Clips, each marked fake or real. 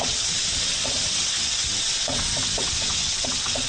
fake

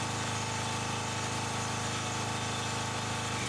real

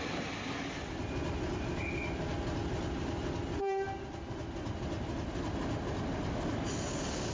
real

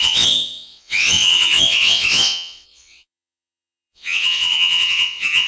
fake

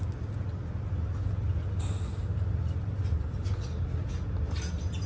real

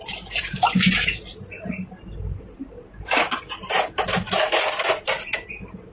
real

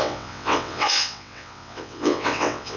fake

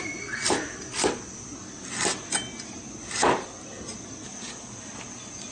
real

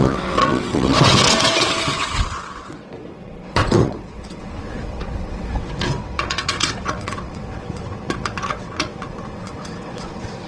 fake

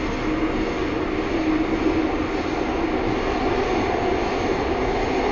real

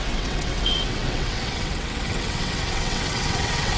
fake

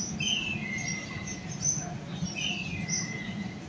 real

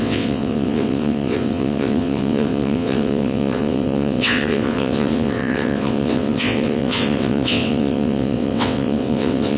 fake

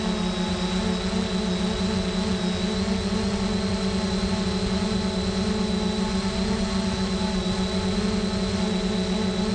real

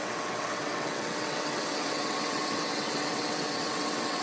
fake